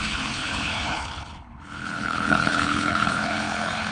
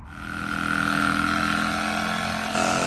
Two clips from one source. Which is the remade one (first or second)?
first